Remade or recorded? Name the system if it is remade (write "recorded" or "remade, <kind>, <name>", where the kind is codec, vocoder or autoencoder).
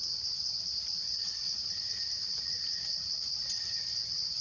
recorded